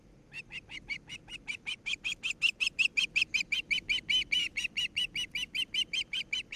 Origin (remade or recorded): recorded